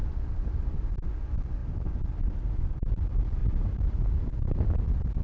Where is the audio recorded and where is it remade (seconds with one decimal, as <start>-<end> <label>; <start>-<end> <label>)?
0.0-0.6 remade; 0.6-1.6 recorded; 1.6-2.3 remade; 2.3-3.4 recorded; 3.4-4.6 remade; 4.6-5.2 recorded